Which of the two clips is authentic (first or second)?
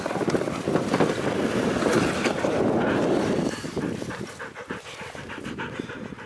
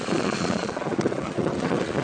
first